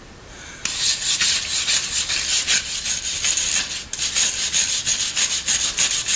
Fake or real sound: real